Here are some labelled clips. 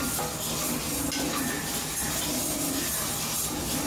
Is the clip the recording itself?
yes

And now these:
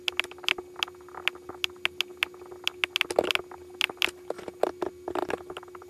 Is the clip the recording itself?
yes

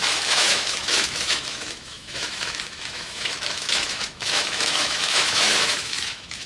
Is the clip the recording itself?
no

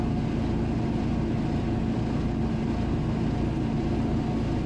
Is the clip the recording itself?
yes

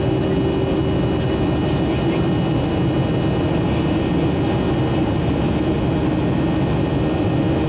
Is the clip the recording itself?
yes